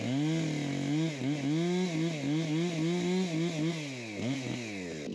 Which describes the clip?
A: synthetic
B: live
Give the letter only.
B